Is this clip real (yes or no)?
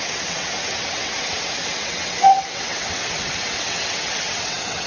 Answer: no